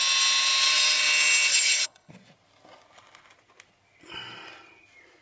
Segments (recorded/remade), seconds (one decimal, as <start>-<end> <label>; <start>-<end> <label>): 0.0-1.5 recorded; 1.5-2.1 remade; 2.1-5.2 recorded